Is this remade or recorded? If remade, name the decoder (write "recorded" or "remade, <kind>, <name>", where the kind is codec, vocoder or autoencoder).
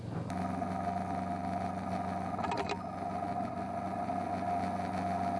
recorded